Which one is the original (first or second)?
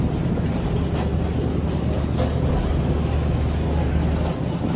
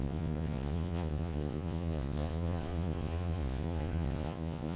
first